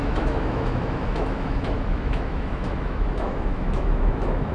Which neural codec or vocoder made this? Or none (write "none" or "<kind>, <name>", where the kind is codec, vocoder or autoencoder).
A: autoencoder, DAC-VAE